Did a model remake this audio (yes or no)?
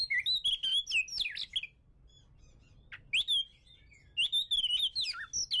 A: no